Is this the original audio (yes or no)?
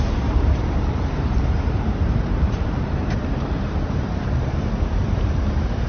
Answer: no